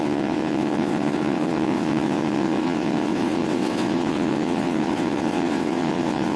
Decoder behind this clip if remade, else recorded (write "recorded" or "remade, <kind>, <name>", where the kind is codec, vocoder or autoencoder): remade, vocoder, WaveNeXt